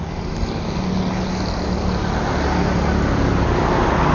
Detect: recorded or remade recorded